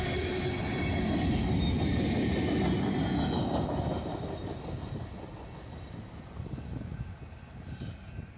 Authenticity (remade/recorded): recorded